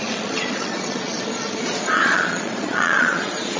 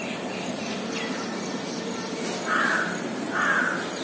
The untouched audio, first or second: second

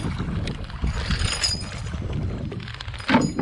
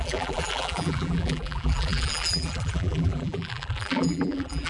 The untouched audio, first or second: first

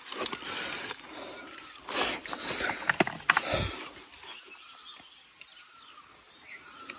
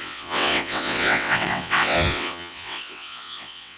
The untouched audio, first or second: first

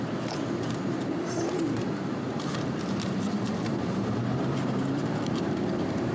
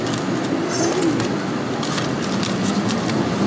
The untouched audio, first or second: second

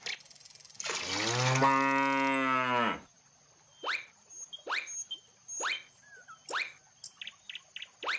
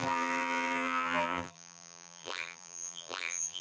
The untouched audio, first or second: first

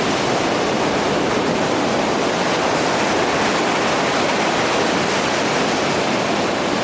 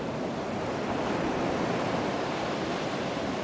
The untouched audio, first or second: first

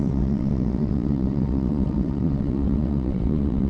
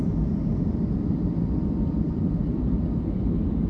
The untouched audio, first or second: second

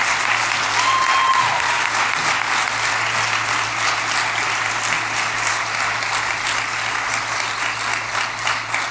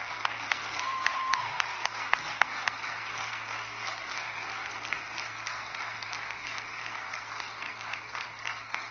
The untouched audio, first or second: first